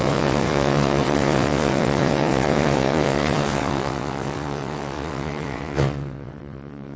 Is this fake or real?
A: fake